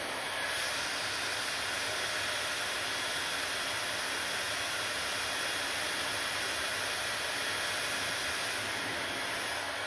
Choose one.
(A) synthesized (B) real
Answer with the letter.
B